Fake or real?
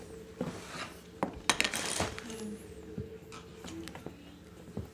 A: real